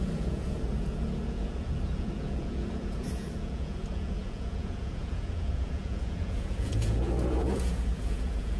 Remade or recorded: remade